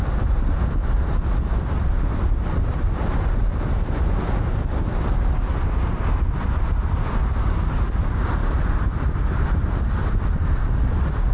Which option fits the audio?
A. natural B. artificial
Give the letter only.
A